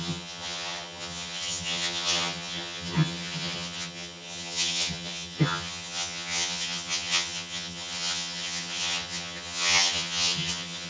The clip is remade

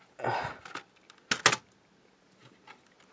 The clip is recorded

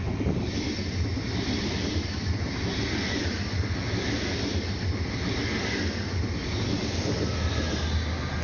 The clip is recorded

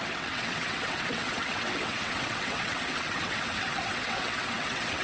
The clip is remade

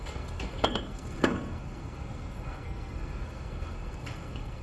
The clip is remade